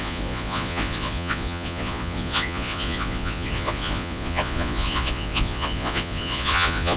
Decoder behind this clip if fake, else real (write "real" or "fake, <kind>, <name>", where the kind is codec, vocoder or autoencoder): fake, vocoder, Vocos